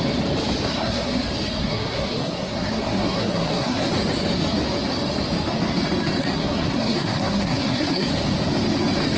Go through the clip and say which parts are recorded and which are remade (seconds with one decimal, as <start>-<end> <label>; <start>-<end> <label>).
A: 0.0-0.7 recorded; 0.7-1.2 remade; 1.2-1.6 recorded; 1.6-3.9 remade; 3.9-6.2 recorded; 6.2-8.1 remade; 8.1-9.2 recorded